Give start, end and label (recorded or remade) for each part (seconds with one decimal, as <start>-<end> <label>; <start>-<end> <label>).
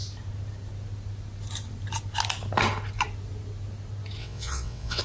0.0-4.2 recorded; 4.2-5.0 remade